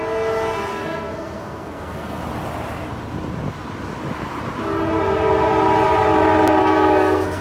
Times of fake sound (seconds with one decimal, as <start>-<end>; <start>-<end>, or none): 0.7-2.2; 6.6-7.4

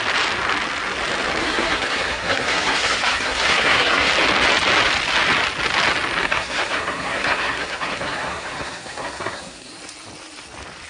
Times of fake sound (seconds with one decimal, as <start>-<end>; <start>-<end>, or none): 1.4-4.1; 6.2-9.7

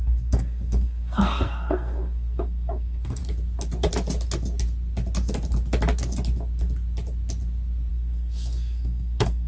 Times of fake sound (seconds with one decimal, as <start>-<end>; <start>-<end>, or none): 0.0-3.2; 7.9-9.5

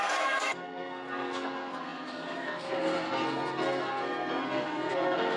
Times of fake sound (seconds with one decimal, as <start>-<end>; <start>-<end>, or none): 0.0-5.4

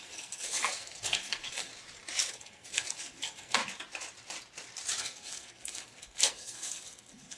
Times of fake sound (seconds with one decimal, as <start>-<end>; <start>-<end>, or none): 0.0-1.7; 2.3-3.6; 5.0-7.4